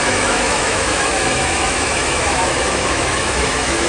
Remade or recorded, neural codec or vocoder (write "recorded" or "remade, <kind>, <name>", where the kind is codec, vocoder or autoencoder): remade, autoencoder, DAC-VAE